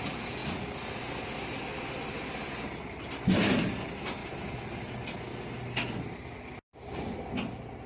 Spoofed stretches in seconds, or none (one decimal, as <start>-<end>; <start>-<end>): none